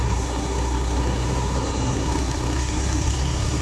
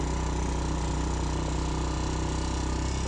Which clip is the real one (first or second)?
second